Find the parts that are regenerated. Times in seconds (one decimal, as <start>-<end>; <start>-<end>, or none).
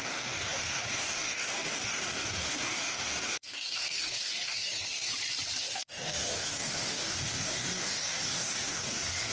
0.0-5.1; 5.6-9.3